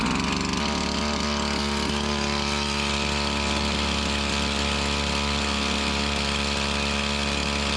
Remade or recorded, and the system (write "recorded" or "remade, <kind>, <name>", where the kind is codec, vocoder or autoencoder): recorded